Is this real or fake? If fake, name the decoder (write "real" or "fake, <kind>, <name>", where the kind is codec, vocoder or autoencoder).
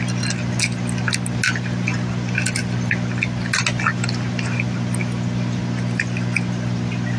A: real